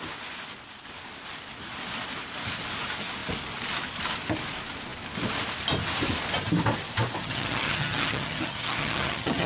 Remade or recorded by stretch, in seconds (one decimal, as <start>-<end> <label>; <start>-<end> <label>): 0.0-7.2 recorded; 7.2-9.5 remade